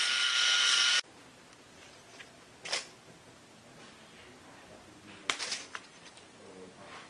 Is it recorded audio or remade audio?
recorded